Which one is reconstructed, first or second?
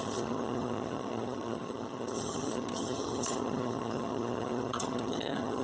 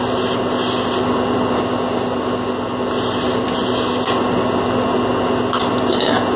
first